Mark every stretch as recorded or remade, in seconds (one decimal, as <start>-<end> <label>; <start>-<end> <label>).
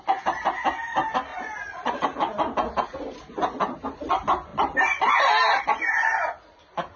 0.0-1.3 recorded; 1.3-2.0 remade; 2.0-7.0 recorded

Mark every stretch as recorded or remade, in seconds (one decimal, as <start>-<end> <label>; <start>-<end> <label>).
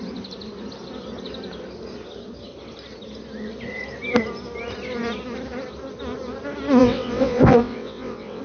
0.0-6.8 recorded; 6.8-8.4 remade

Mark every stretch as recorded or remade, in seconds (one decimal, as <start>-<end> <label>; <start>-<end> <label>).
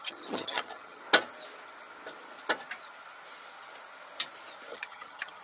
0.0-1.0 remade; 1.0-4.7 recorded; 4.7-5.4 remade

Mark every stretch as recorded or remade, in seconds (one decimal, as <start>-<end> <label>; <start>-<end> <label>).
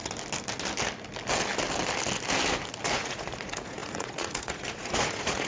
0.0-2.9 recorded; 2.9-5.5 remade